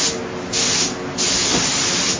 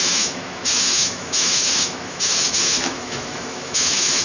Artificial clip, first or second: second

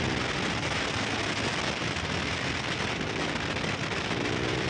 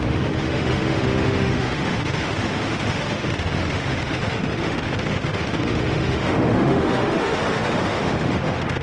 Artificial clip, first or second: second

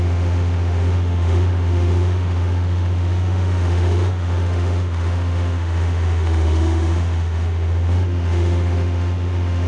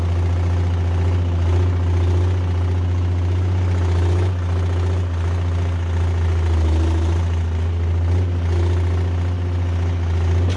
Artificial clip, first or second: first